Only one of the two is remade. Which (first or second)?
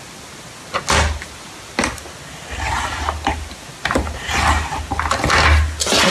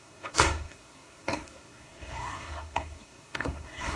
second